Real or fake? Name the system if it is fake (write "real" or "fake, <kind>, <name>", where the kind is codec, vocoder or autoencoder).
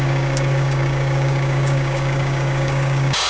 fake, codec, DAC